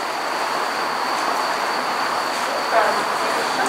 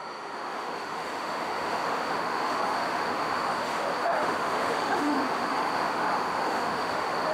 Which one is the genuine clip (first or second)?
first